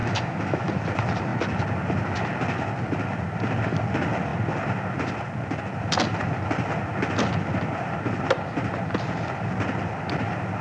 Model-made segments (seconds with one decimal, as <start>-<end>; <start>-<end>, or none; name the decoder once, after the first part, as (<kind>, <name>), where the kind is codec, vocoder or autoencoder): 0.0-0.7 (autoencoder, DAC-VAE)